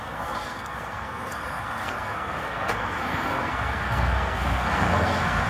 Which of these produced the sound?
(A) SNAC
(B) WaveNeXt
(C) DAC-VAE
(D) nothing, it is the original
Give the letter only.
A